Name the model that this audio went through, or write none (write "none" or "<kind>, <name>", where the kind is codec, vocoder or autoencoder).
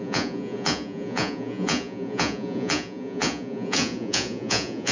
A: vocoder, Vocos